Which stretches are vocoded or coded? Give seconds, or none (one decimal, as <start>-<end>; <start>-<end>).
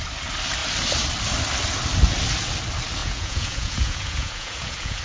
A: 3.0-5.0